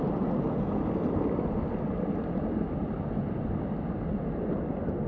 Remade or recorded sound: recorded